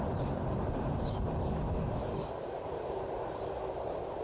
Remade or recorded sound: recorded